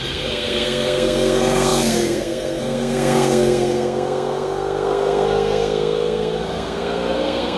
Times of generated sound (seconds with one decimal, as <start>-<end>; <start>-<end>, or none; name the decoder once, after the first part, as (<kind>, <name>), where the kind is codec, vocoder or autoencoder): 0.0-7.6 (codec, SNAC)